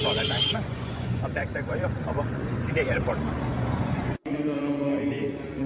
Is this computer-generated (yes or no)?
yes